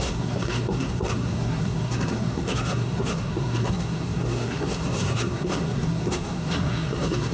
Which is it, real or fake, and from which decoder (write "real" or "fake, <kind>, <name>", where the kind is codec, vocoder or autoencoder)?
fake, codec, SNAC